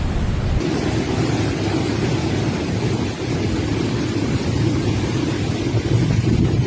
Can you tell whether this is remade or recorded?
recorded